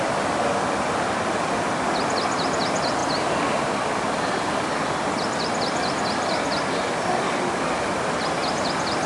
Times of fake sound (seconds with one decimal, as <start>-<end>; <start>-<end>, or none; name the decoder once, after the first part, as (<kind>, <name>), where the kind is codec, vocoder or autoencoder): 3.0-4.1 (vocoder, BigVGAN v2); 8.4-9.1

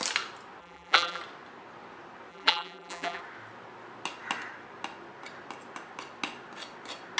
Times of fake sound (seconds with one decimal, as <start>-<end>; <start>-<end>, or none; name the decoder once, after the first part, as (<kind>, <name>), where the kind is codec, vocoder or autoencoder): 0.6-1.2 (vocoder, BigVGAN v2); 2.3-3.2